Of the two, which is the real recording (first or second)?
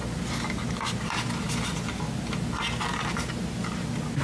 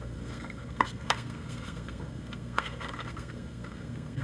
first